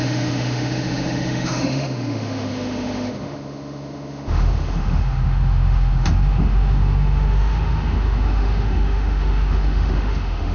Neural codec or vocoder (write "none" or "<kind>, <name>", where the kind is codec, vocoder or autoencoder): autoencoder, DAC-VAE